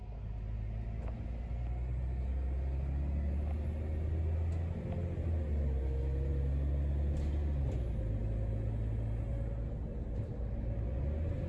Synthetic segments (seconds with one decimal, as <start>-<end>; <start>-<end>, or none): none